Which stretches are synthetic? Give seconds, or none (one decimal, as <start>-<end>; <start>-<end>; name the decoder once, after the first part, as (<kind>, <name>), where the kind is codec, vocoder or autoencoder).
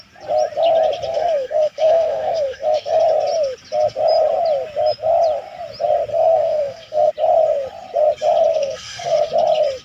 1.1-3.0 (codec, SNAC); 6.1-7.1; 8.5-9.3